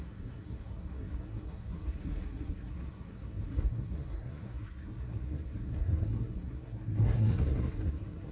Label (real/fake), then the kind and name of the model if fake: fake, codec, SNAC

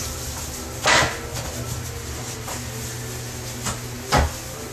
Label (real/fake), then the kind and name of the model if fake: real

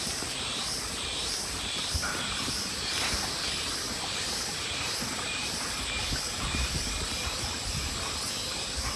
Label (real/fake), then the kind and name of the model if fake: real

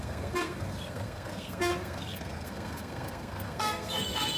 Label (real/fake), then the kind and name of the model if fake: fake, codec, SNAC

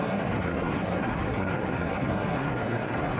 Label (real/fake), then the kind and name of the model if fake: fake, codec, SNAC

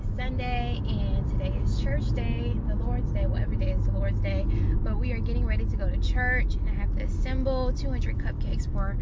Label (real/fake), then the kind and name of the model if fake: real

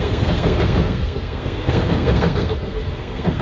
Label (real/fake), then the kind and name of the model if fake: fake, codec, SNAC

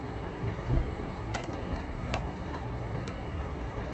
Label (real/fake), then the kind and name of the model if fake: fake, codec, SNAC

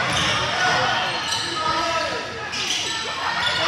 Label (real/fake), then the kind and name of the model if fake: real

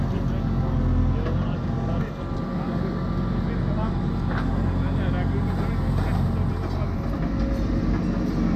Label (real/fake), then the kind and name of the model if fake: real